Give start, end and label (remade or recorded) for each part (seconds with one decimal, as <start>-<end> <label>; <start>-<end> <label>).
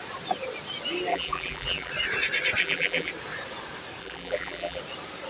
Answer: 0.0-1.1 recorded; 1.1-1.9 remade; 1.9-2.6 recorded; 2.6-3.1 remade; 3.1-4.0 recorded; 4.0-4.8 remade; 4.8-5.3 recorded